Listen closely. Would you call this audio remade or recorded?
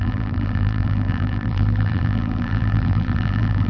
remade